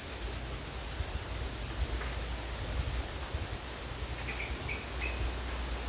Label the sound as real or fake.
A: real